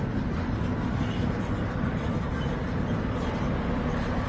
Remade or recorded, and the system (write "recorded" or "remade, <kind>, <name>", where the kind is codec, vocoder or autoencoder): recorded